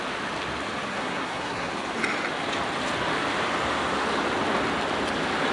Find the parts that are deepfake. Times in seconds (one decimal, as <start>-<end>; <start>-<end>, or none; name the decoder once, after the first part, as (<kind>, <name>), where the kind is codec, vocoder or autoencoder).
0.9-1.7 (codec, SNAC)